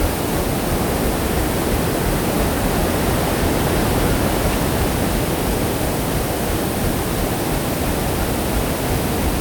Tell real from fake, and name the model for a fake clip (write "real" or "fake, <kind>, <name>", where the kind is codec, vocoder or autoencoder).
real